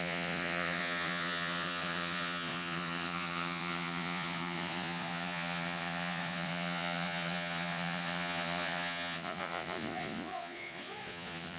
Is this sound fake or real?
fake